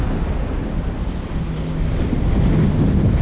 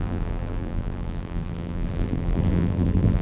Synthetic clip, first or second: second